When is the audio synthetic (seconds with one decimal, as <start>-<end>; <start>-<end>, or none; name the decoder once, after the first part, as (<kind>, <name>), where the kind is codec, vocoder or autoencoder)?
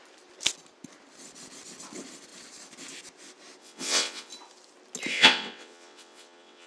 3.6-4.3 (vocoder, WaveNeXt); 5.1-6.7